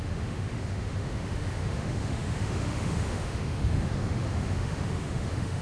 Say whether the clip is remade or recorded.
remade